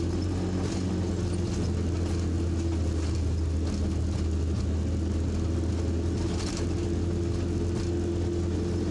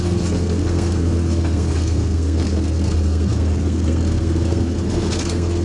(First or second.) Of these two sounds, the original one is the first